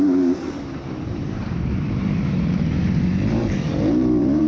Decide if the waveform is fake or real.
fake